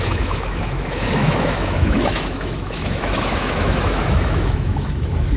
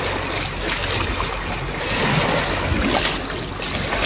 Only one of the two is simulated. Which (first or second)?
first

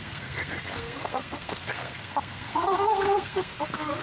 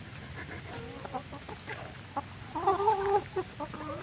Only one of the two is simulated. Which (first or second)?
first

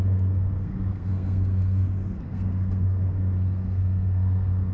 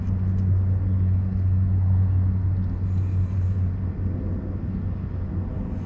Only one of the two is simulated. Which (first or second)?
first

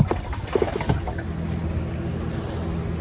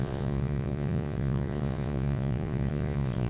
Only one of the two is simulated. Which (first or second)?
second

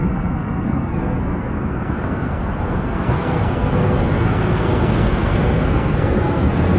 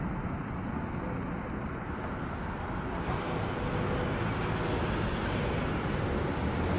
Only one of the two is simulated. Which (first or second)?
first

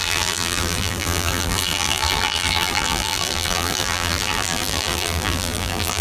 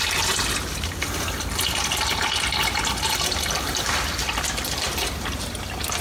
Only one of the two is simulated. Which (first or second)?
first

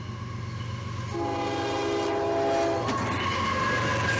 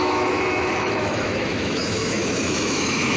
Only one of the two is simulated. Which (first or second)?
second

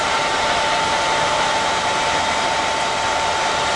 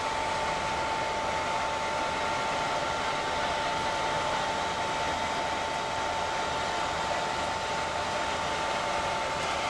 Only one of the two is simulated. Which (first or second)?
first